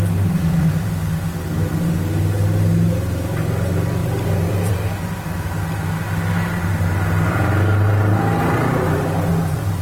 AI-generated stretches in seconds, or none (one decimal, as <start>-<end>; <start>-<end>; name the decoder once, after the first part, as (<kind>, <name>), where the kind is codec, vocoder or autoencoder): 4.0-4.7 (vocoder, BigVGAN v2); 8.4-9.3